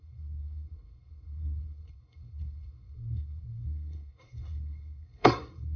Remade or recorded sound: remade